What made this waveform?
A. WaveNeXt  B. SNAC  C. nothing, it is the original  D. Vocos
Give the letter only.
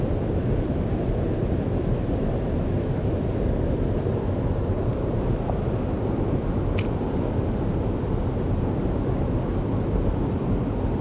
C